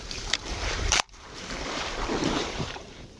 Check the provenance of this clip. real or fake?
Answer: fake